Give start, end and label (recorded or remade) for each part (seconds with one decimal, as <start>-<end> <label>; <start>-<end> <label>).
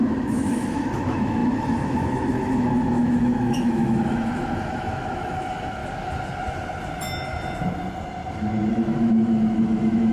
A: 0.0-5.8 remade; 5.8-8.7 recorded; 8.7-10.1 remade